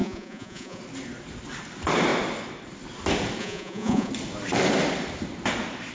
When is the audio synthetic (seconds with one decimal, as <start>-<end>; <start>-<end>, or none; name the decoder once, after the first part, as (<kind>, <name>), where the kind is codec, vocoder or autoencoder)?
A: 0.0-0.8 (vocoder, Vocos); 3.4-4.1